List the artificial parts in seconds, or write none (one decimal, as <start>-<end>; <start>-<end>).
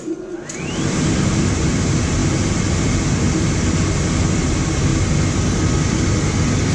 none